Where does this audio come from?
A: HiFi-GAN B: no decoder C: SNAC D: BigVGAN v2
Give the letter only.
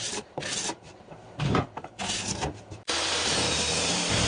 D